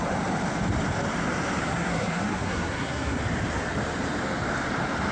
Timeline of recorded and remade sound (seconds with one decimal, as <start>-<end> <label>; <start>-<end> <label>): 0.0-1.6 recorded; 1.6-3.2 remade; 3.2-5.1 recorded